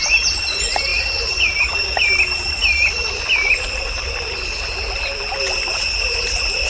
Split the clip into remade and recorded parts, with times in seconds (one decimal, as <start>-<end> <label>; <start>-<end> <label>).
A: 0.0-6.7 recorded

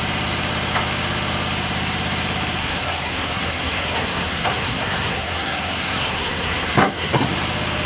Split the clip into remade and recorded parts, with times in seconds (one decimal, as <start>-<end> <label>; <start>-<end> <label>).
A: 0.0-2.6 recorded; 2.6-7.3 remade; 7.3-7.9 recorded

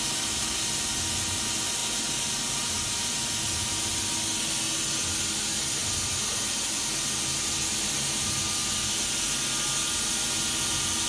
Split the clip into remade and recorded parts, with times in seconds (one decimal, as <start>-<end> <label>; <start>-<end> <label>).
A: 0.0-11.1 recorded

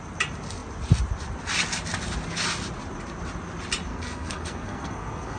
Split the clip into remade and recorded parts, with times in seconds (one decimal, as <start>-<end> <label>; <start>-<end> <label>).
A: 0.0-3.9 recorded; 3.9-5.4 remade

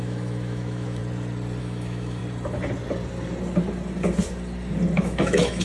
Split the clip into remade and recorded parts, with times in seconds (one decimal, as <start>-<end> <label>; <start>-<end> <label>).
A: 0.0-1.0 remade; 1.0-1.6 recorded; 1.6-2.2 remade; 2.2-5.0 recorded; 5.0-5.6 remade